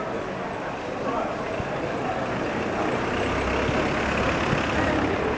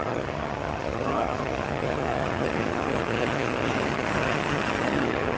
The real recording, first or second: first